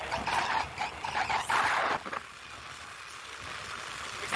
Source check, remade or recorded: recorded